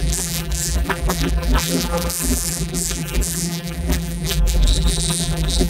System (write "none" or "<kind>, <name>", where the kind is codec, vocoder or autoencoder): vocoder, BigVGAN v2